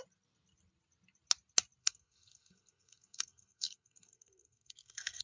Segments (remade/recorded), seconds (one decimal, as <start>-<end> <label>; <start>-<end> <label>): 0.0-1.8 recorded; 1.8-5.2 remade